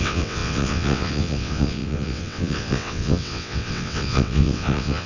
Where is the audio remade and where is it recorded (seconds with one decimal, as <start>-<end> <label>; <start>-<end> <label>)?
0.0-5.1 remade